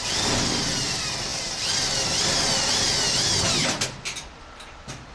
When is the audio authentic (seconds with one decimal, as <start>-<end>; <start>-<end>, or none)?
0.0-5.1